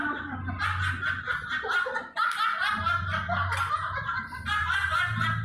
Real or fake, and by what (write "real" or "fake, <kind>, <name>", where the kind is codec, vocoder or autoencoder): real